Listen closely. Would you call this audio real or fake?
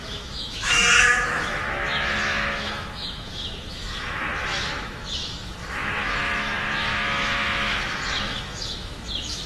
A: fake